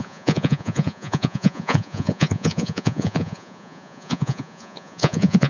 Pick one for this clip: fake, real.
fake